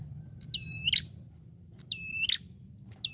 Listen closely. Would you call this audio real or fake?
real